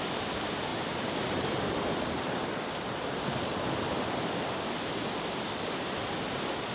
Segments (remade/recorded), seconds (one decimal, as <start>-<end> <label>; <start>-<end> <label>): 0.0-0.7 recorded; 0.7-4.7 remade; 4.7-6.7 recorded